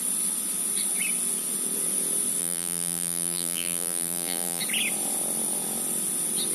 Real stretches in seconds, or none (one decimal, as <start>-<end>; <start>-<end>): 0.0-2.4; 4.6-6.5